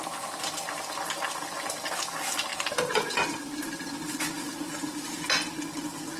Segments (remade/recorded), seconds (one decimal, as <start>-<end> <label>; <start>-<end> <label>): 0.0-6.2 recorded